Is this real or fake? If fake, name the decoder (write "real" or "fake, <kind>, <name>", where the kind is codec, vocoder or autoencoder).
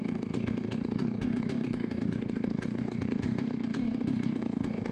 fake, codec, DAC